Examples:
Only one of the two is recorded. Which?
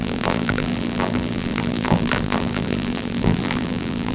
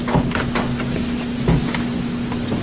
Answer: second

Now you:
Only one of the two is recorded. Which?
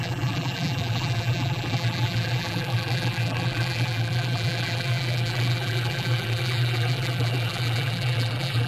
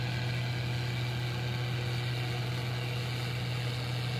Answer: second